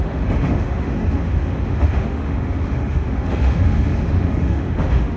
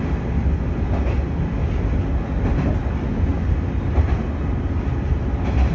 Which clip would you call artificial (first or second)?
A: first